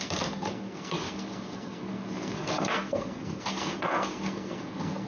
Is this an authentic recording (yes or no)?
no